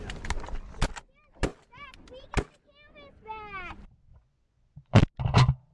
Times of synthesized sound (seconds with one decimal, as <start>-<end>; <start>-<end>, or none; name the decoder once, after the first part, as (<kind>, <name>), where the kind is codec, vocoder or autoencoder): 4.1-5.0 (vocoder, Vocos)